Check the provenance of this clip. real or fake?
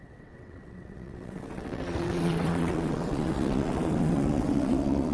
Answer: fake